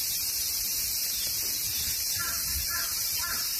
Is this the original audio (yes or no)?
yes